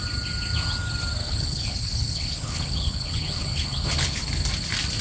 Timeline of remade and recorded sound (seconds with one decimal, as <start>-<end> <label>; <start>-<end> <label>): 0.0-1.2 recorded; 1.2-4.2 remade; 4.2-5.0 recorded